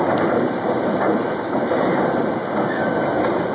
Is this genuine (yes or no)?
no